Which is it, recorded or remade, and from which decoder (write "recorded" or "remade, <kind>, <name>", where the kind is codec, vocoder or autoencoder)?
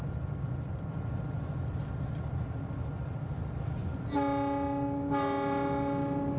recorded